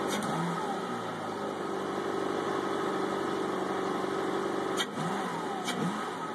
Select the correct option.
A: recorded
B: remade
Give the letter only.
A